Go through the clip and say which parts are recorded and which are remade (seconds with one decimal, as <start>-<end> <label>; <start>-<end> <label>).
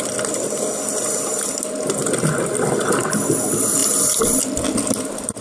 0.0-5.4 recorded